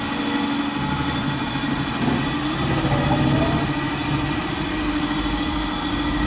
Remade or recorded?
recorded